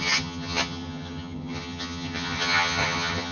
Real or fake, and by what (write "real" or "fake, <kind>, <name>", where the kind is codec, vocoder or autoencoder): fake, vocoder, HiFi-GAN